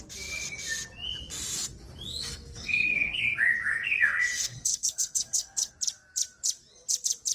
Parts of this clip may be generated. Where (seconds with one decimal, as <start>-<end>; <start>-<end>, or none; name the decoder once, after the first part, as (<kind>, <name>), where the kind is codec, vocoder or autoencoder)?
2.1-3.2 (codec, SNAC); 3.7-5.7